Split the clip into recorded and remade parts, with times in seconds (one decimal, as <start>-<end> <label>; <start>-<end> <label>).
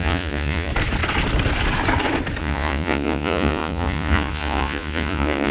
0.0-0.7 remade; 0.7-2.4 recorded; 2.4-5.5 remade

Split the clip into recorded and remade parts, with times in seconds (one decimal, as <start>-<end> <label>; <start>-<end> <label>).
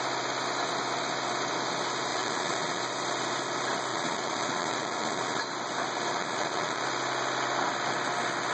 0.0-2.1 recorded; 2.1-2.8 remade; 2.8-3.9 recorded; 3.9-5.4 remade; 5.4-6.1 recorded; 6.1-6.8 remade; 6.8-8.5 recorded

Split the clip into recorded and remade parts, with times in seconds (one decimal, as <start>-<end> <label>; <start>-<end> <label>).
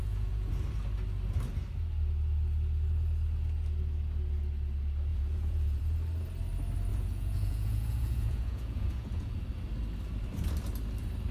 0.0-0.5 remade; 0.5-5.1 recorded; 5.1-5.8 remade; 5.8-6.9 recorded; 6.9-9.4 remade; 9.4-11.3 recorded